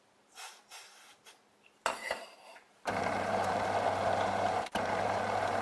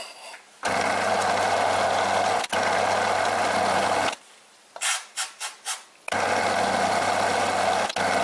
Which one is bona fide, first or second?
second